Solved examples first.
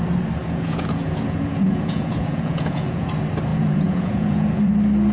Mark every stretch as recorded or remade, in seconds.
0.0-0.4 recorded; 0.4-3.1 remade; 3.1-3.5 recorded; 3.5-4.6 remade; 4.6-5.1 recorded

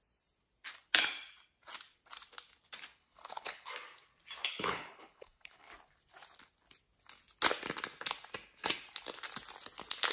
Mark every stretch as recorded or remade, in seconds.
0.0-3.0 recorded; 3.0-3.7 remade; 3.7-4.4 recorded; 4.4-5.7 remade; 5.7-10.1 recorded

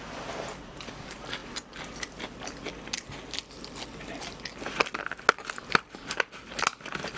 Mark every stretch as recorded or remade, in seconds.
0.0-7.2 recorded

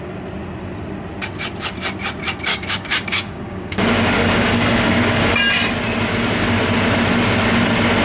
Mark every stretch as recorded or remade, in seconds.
0.0-2.5 recorded; 2.5-5.3 remade; 5.3-8.0 recorded

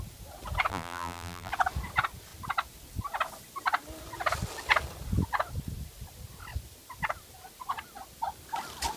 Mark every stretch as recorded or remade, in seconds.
0.0-0.7 recorded; 0.7-1.5 remade; 1.5-9.0 recorded

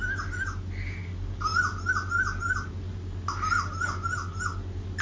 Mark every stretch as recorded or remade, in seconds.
0.0-5.0 recorded